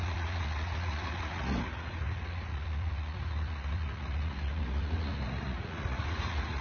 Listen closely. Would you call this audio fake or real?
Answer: fake